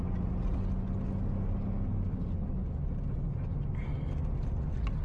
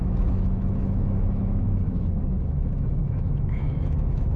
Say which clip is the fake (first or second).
second